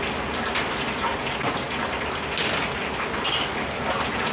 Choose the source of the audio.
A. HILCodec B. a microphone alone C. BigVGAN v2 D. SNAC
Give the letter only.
B